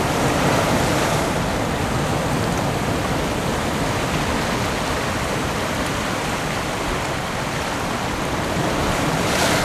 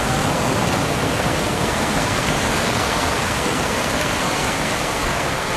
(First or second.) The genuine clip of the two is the first